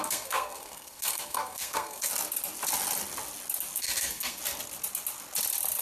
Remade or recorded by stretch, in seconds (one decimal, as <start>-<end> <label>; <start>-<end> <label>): 0.0-2.1 remade; 2.1-3.8 recorded; 3.8-4.4 remade; 4.4-5.8 recorded